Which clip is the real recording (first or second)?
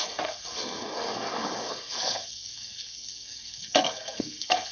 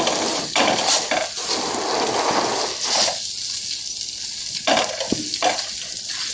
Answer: second